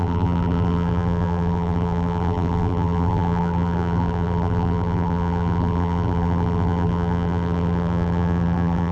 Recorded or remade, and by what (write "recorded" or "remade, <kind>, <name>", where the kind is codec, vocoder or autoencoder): remade, vocoder, BigVGAN v2